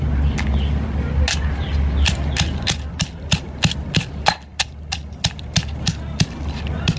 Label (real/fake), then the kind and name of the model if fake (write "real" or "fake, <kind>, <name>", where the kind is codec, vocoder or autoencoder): real